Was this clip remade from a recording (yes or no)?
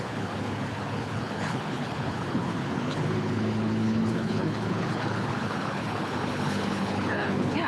yes